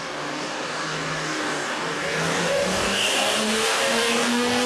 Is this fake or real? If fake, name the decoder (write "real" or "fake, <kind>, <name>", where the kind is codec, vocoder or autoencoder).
fake, codec, DAC